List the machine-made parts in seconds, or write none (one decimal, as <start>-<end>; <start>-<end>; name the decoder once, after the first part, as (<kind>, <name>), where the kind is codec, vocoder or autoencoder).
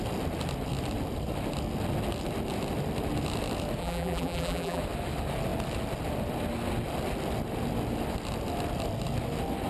3.8-4.8 (vocoder, BigVGAN v2)